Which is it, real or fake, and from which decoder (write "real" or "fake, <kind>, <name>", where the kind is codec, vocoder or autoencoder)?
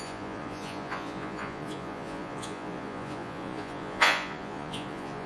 fake, vocoder, Vocos